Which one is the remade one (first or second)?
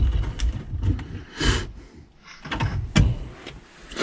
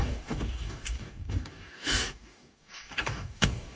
second